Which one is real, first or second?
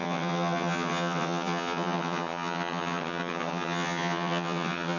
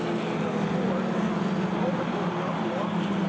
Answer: second